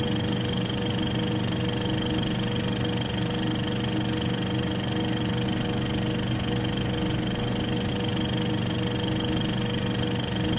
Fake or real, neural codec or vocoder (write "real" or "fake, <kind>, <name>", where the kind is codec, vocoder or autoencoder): real